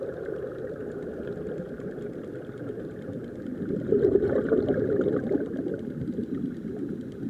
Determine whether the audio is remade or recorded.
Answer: remade